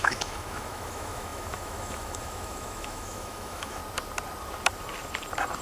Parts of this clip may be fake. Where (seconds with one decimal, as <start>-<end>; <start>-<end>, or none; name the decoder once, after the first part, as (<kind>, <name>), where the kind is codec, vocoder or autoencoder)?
0.0-3.8 (autoencoder, DAC-VAE)

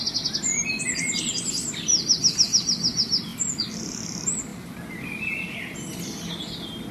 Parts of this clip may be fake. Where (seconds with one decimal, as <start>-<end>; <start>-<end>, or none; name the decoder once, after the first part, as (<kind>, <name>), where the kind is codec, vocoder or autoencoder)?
none